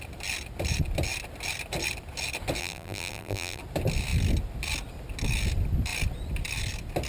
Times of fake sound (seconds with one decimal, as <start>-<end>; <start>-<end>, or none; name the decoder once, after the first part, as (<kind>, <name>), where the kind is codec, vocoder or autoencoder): 2.6-3.6 (vocoder, BigVGAN v2)